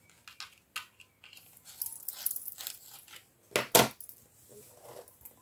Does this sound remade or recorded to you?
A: recorded